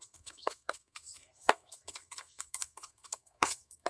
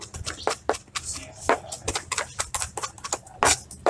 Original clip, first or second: second